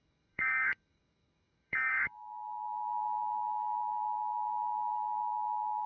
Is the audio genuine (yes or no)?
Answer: no